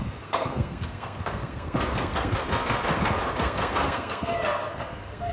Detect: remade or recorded remade